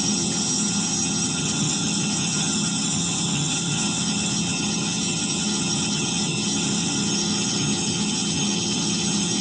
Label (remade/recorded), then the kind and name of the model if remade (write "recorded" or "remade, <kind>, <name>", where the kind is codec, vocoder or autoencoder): remade, vocoder, HiFi-GAN